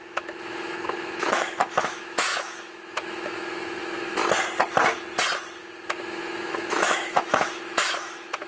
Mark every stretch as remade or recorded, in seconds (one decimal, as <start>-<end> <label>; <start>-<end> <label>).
0.0-4.2 remade; 4.2-5.6 recorded; 5.6-8.5 remade